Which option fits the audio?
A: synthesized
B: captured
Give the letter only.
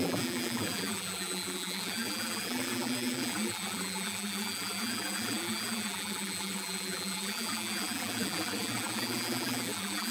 A